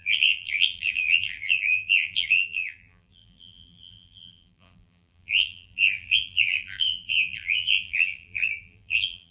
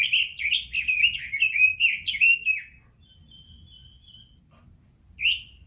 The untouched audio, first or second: second